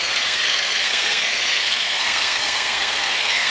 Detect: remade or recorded remade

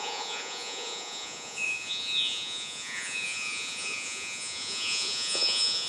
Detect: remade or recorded remade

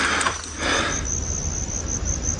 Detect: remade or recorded recorded